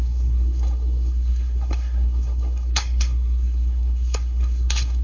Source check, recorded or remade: remade